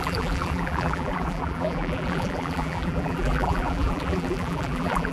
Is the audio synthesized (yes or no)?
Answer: yes